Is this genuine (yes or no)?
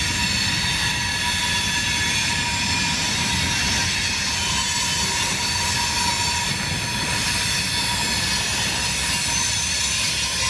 yes